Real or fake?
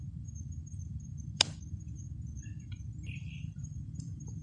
fake